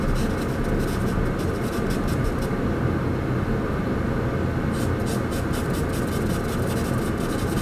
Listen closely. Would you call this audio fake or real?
real